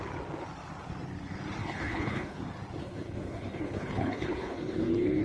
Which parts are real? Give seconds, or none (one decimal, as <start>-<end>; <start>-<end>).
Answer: 0.0-1.6; 2.4-2.8